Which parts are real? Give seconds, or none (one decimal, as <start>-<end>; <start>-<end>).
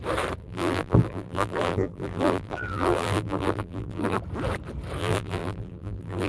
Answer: 0.0-0.4; 4.2-5.0